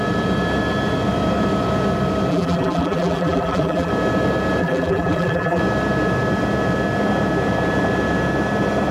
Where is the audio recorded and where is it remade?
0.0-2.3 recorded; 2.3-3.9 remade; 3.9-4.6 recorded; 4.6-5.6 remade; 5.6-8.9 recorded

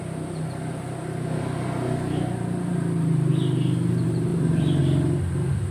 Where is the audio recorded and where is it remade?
0.0-4.3 recorded; 4.3-4.8 remade; 4.8-5.7 recorded

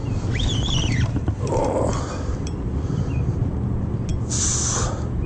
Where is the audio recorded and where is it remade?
0.0-3.2 remade; 3.2-4.1 recorded; 4.1-5.3 remade

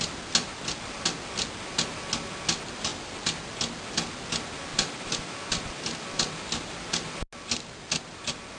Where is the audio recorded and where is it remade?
0.0-4.7 recorded; 4.7-6.3 remade; 6.3-8.6 recorded

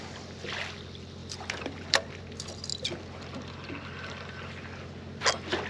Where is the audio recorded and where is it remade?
0.0-1.2 recorded; 1.2-2.2 remade; 2.2-5.7 recorded